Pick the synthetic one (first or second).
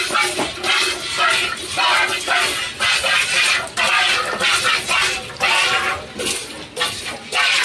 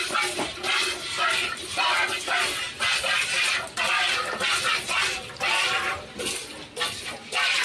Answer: second